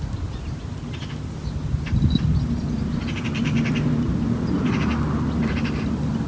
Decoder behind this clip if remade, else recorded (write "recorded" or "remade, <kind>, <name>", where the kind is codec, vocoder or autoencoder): recorded